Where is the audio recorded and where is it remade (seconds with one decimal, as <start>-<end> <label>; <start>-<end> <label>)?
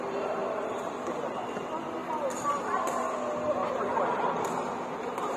0.0-0.4 recorded; 0.4-1.1 remade; 1.1-3.9 recorded; 3.9-4.6 remade; 4.6-5.4 recorded